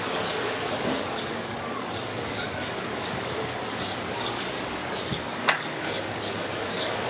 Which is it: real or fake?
fake